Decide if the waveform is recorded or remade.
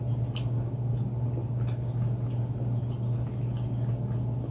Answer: recorded